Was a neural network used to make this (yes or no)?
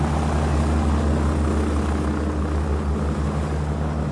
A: no